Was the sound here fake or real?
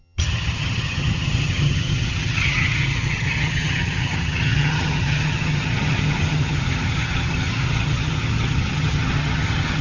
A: fake